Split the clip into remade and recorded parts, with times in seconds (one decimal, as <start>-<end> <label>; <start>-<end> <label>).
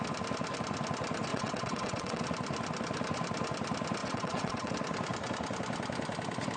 0.0-1.3 recorded; 1.3-2.2 remade; 2.2-4.0 recorded; 4.0-4.7 remade; 4.7-6.6 recorded